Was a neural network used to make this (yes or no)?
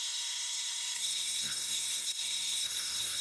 yes